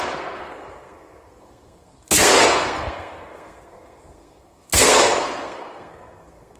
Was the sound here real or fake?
fake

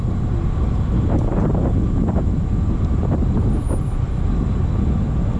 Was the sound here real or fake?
real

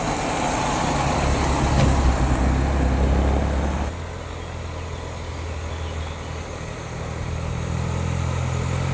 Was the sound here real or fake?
real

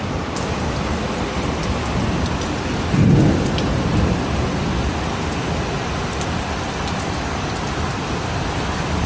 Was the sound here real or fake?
real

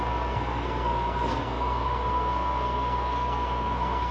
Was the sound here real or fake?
fake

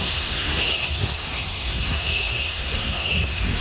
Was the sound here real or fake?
fake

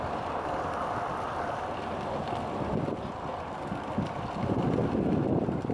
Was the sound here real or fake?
real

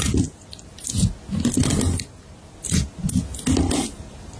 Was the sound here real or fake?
real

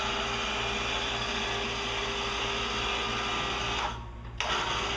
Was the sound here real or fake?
real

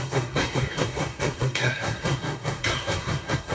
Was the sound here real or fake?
fake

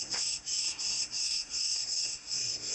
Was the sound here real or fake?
fake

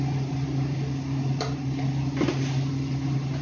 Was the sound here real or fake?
real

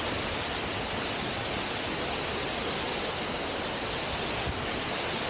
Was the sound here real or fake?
real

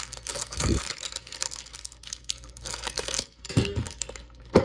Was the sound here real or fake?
fake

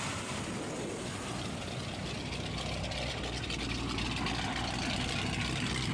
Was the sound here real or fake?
real